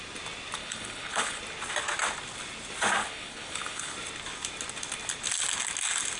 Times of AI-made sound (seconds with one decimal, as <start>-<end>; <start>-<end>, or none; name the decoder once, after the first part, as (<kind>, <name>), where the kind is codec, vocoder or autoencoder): 0.6-1.4 (codec, HILCodec); 3.0-3.9